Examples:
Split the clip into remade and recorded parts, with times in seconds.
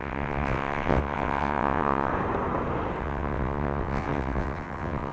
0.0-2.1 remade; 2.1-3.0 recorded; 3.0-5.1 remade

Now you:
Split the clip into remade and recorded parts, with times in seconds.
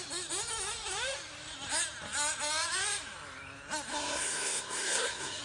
0.0-3.9 recorded; 3.9-5.4 remade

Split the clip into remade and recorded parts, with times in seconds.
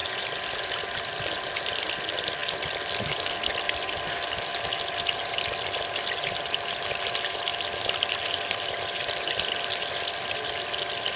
0.0-11.2 recorded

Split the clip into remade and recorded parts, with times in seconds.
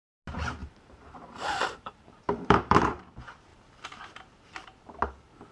0.0-0.6 recorded; 0.6-3.0 remade; 3.0-5.5 recorded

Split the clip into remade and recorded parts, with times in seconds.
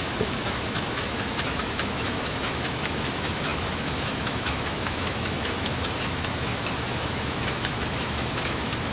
0.0-8.9 remade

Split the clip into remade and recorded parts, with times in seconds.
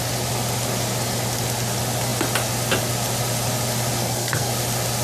0.0-4.0 recorded; 4.0-4.5 remade; 4.5-5.0 recorded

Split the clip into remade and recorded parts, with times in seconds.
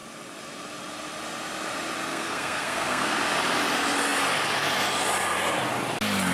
0.0-2.1 recorded; 2.1-3.2 remade; 3.2-6.3 recorded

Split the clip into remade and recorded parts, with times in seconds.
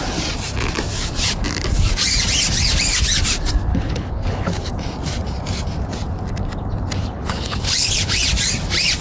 0.0-3.7 recorded; 3.7-4.7 remade; 4.7-7.0 recorded; 7.0-8.2 remade; 8.2-9.0 recorded